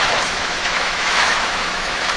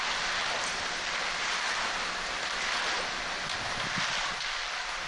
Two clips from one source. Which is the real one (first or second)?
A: second